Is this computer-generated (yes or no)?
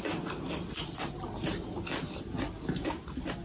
no